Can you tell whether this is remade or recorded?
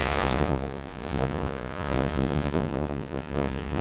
remade